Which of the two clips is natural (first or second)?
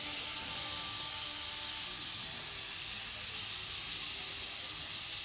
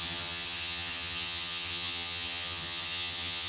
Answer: first